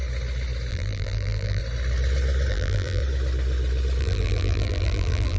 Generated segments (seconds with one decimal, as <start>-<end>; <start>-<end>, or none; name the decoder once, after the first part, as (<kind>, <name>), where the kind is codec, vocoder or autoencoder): 0.7-1.6 (vocoder, BigVGAN v2); 2.5-3.0; 4.0-5.4